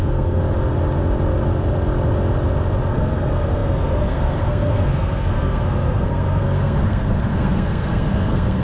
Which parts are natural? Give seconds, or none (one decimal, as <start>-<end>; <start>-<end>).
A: 0.4-2.9